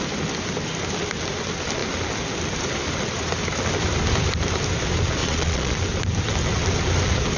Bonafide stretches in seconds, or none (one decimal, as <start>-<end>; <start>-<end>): 0.0-5.2; 5.8-7.4